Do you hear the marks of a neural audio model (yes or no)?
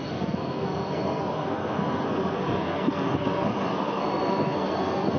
yes